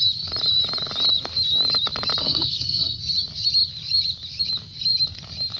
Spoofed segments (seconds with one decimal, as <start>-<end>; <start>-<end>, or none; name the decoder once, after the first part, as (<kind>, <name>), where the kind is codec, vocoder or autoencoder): 2.2-3.0 (codec, SNAC)